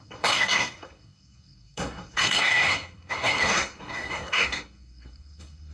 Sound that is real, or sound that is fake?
fake